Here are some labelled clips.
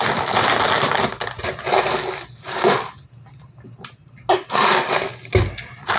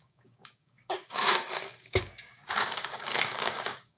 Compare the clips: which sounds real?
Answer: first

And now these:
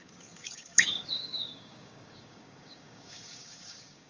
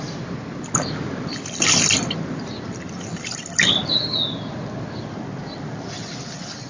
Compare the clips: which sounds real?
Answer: second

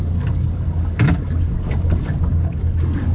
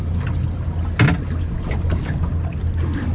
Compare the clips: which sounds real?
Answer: second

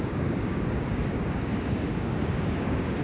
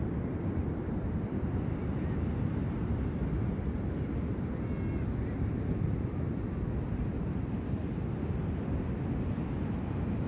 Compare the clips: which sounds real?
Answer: second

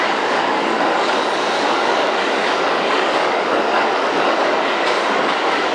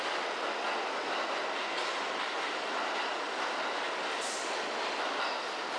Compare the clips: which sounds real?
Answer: second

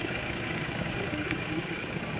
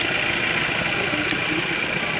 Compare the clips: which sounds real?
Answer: second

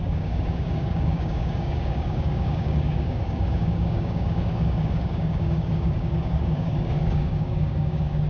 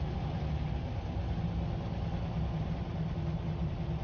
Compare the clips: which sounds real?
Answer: second